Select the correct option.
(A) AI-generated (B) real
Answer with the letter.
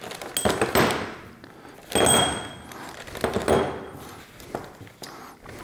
B